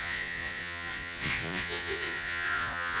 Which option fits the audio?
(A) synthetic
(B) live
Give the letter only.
A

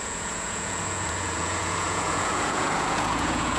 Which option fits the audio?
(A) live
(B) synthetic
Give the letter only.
B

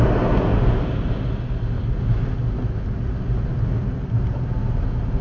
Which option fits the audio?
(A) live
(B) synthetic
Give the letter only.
A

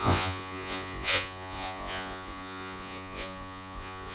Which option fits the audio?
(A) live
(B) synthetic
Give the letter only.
B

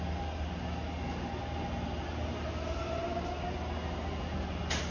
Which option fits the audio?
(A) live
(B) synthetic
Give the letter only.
A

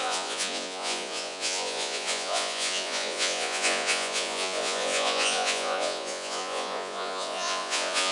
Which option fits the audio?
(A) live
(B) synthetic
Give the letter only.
B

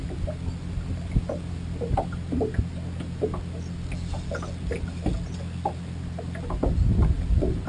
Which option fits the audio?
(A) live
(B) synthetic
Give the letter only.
A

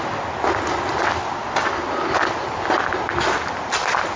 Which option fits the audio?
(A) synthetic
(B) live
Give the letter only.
B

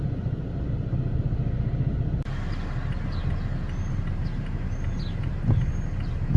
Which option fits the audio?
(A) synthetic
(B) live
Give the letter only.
B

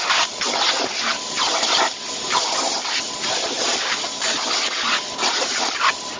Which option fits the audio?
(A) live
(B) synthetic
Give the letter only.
A